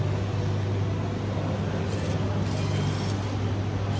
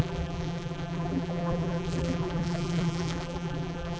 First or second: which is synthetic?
second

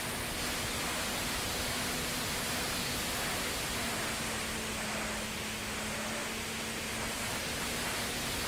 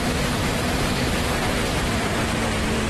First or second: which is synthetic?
second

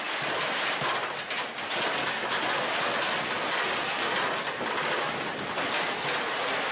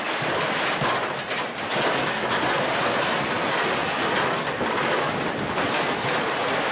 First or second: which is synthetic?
second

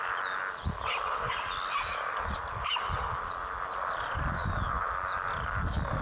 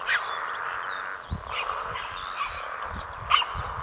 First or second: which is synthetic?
second